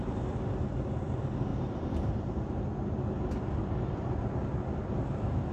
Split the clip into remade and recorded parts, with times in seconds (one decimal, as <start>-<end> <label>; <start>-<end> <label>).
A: 0.0-1.5 recorded; 1.5-2.4 remade; 2.4-5.5 recorded